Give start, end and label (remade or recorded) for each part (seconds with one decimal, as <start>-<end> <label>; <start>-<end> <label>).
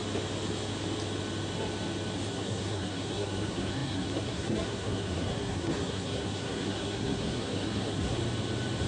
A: 0.0-2.3 recorded; 2.3-8.2 remade; 8.2-8.9 recorded